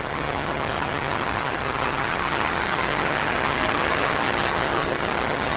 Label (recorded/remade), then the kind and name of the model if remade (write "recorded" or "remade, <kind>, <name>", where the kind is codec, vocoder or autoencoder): remade, vocoder, HiFi-GAN